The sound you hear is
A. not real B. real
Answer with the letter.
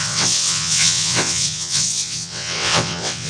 A